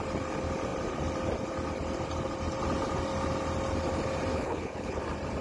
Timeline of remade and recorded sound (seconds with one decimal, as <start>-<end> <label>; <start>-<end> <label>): 0.0-4.3 recorded; 4.3-5.0 remade; 5.0-5.4 recorded